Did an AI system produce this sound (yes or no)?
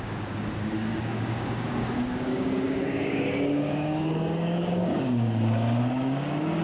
yes